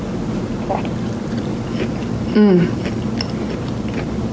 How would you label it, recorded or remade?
recorded